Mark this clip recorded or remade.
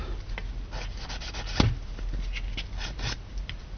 recorded